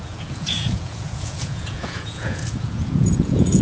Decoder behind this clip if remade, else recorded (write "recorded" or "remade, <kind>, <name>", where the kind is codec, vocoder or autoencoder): remade, vocoder, Vocos